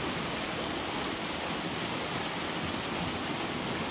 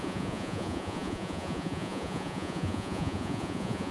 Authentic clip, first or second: first